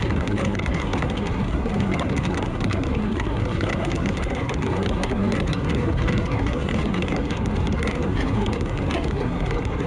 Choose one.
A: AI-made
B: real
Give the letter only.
A